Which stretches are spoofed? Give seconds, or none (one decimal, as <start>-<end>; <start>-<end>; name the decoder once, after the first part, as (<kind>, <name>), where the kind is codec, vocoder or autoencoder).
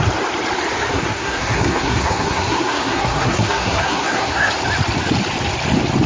0.9-4.5 (codec, SNAC)